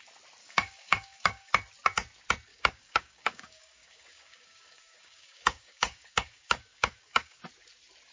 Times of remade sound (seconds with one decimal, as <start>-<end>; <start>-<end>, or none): 0.4-1.5; 2.5-7.4